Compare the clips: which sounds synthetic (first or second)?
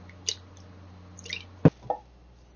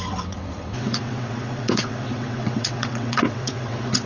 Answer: second